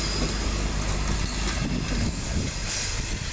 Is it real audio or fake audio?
real